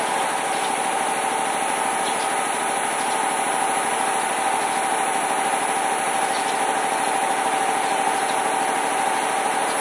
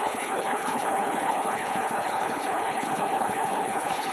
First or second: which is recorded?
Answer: first